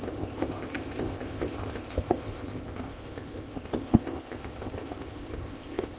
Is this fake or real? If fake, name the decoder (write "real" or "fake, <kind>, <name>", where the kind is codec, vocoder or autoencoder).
fake, codec, ZipCodec